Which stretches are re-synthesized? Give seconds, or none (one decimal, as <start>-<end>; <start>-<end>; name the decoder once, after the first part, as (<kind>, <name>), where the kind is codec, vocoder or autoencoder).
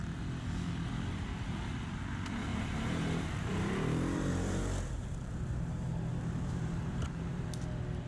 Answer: 2.5-7.4 (vocoder, BigVGAN v2)